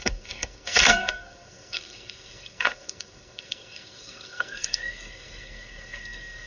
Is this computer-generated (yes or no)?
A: yes